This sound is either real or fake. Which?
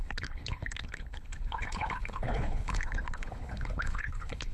fake